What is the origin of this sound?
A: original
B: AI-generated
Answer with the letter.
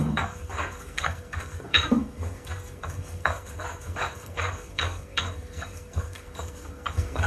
B